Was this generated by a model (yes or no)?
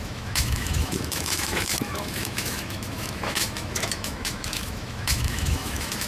yes